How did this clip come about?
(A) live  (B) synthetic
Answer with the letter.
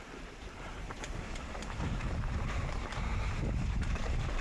B